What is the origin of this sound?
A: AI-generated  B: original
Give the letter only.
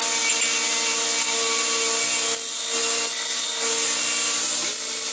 B